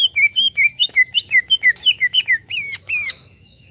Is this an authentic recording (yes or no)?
no